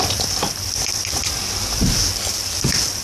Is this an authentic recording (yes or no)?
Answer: yes